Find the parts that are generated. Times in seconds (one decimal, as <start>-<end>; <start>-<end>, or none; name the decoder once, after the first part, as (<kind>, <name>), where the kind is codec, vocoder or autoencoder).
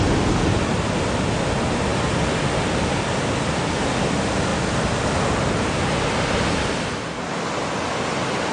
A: none